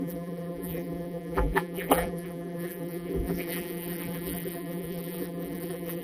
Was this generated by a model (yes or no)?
yes